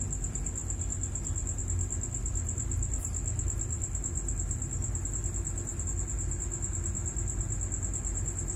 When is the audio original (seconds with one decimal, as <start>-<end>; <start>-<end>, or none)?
0.0-8.6